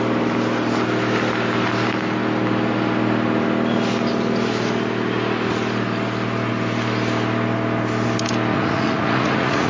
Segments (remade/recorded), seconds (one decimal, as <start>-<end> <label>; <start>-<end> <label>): 0.0-8.5 recorded; 8.5-9.7 remade